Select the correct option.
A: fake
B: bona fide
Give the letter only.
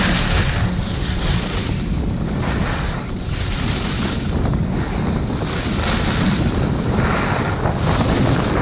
B